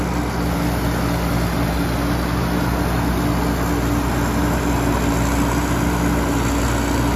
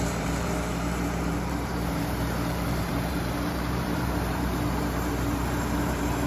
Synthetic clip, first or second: second